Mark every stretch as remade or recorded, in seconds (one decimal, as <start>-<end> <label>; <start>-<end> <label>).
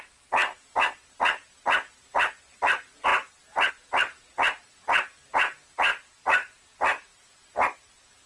0.0-5.9 recorded; 5.9-6.8 remade; 6.8-8.3 recorded